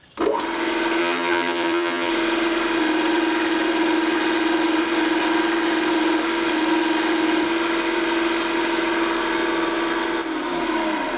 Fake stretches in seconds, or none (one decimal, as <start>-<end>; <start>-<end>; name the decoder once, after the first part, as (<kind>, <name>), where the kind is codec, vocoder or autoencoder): 1.0-2.1 (vocoder, HiFi-GAN)